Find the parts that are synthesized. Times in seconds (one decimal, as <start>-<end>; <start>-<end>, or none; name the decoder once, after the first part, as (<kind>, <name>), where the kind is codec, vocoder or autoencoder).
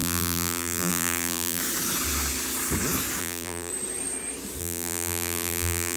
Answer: 0.0-1.6 (vocoder, BigVGAN v2); 3.2-3.7; 4.6-6.0